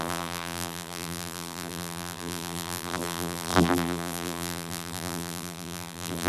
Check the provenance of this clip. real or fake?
fake